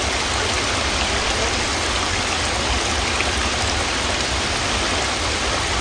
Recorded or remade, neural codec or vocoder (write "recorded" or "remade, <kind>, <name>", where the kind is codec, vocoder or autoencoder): recorded